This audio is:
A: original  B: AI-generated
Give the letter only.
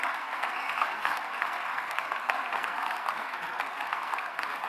B